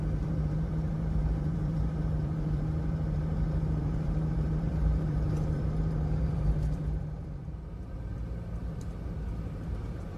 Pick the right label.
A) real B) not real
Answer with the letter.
B